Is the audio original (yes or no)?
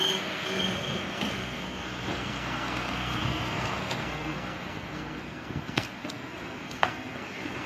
no